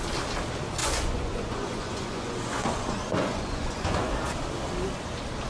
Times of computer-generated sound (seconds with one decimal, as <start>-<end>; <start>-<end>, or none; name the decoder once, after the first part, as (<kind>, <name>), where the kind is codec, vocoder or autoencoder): 0.8-4.1 (vocoder, Vocos)